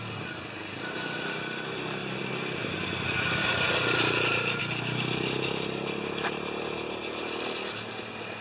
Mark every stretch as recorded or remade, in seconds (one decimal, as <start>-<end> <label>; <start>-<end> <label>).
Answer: 0.0-3.4 recorded; 3.4-4.6 remade; 4.6-8.4 recorded